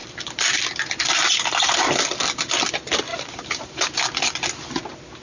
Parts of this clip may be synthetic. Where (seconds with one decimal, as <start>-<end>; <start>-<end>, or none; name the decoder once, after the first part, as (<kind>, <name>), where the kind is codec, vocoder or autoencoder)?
0.0-0.6 (vocoder, BigVGAN v2); 3.1-4.0